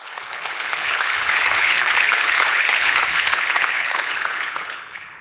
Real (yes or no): no